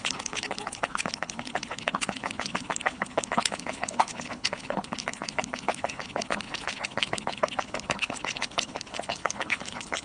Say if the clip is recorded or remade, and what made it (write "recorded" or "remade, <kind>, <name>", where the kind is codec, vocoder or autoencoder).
remade, codec, HILCodec